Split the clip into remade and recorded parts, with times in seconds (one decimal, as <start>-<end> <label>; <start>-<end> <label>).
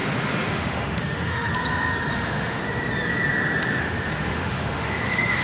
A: 0.0-0.5 recorded; 0.5-1.5 remade; 1.5-2.1 recorded; 2.1-2.6 remade; 2.6-3.8 recorded; 3.8-5.4 remade